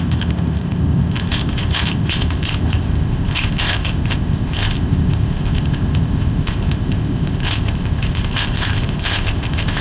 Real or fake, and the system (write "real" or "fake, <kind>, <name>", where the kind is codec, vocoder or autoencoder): fake, codec, ZipCodec